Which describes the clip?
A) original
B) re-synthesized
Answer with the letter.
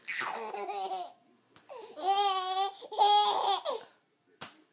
A